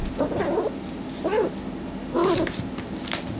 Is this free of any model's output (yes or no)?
yes